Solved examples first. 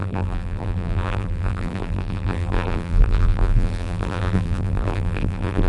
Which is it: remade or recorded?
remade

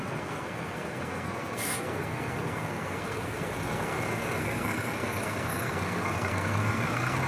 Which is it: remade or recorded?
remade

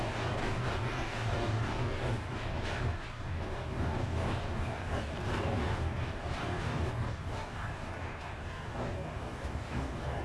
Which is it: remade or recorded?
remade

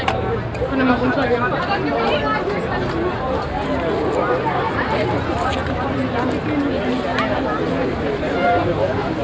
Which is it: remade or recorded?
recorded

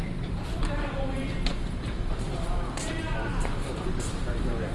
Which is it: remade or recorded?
remade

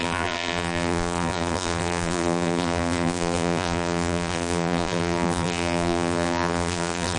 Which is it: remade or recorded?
remade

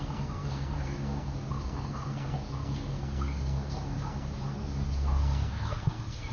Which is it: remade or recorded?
remade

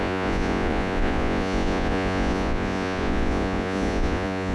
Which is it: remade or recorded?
remade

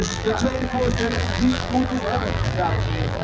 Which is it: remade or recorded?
remade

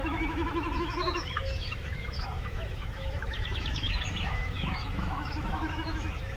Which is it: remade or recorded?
remade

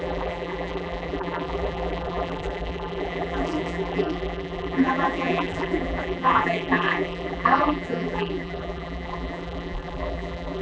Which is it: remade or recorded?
remade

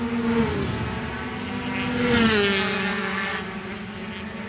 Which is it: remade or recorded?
recorded